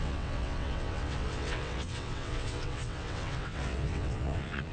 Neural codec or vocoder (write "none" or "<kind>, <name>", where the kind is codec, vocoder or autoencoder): vocoder, WaveNeXt